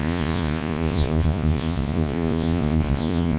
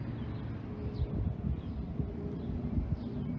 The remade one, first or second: first